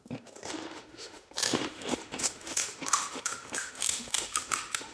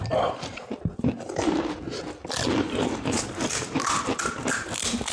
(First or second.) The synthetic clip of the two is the first